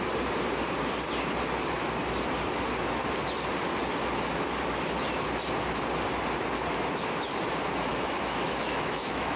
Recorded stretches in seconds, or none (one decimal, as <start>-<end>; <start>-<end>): 0.0-7.9

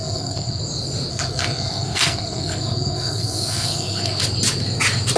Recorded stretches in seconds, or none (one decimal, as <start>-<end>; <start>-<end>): 0.6-1.1; 4.2-5.2

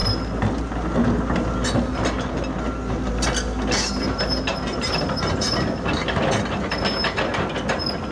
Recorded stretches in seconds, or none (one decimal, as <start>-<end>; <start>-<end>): 0.0-8.1